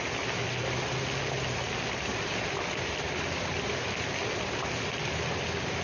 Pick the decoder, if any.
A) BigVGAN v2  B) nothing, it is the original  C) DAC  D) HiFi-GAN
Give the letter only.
B